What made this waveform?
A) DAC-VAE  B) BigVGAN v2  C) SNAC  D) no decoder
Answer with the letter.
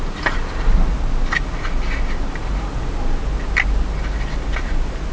D